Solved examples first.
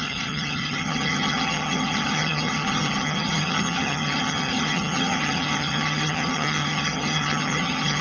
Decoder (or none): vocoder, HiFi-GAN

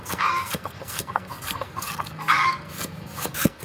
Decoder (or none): codec, SNAC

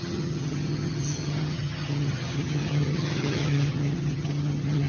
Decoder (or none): vocoder, HiFi-GAN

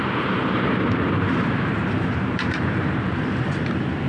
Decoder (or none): vocoder, BigVGAN v2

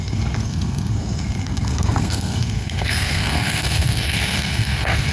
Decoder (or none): codec, SNAC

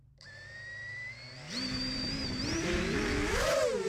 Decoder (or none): vocoder, BigVGAN v2